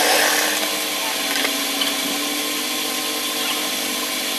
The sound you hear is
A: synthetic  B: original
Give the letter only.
B